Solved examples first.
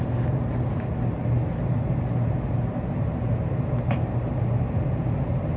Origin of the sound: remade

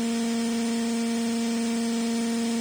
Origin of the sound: recorded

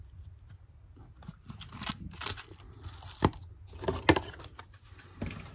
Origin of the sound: recorded